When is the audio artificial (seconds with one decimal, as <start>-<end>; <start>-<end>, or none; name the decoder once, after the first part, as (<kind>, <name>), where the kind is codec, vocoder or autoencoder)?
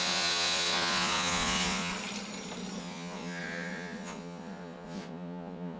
0.0-1.9 (vocoder, Vocos); 2.8-5.8